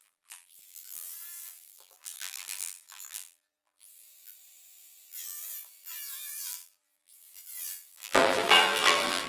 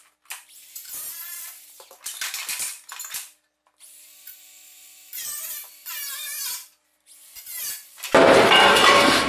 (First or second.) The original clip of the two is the second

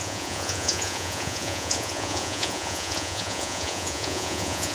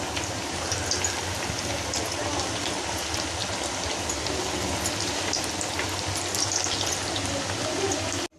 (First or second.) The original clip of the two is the second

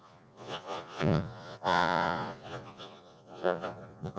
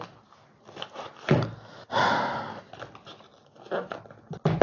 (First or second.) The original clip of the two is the second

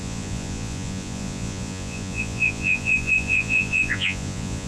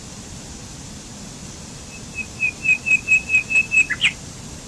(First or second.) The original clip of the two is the second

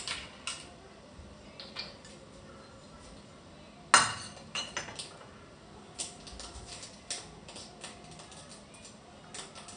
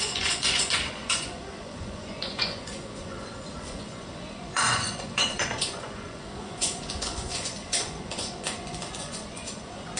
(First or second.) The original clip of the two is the first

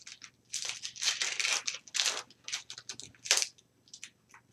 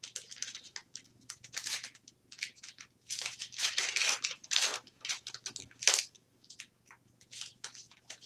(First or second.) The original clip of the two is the first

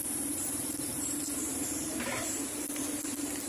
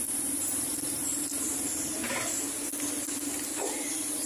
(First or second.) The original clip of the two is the second